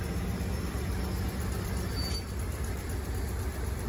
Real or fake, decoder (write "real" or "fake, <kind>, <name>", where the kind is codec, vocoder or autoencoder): fake, vocoder, BigVGAN v2